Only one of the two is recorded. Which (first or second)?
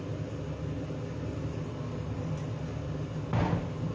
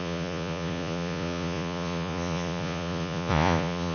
first